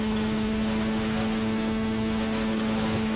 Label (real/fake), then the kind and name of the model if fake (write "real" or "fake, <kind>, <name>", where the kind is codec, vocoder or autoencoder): fake, autoencoder, DAC-VAE